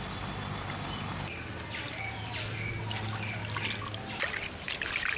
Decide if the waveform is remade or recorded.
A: recorded